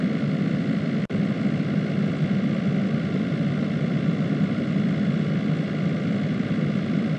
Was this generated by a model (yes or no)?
yes